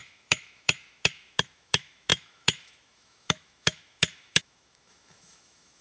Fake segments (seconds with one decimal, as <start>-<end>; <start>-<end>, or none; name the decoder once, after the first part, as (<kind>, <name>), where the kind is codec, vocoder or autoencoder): 0.0-5.8 (autoencoder, DAC-VAE)